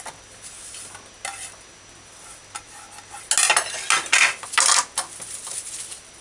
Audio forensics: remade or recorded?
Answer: recorded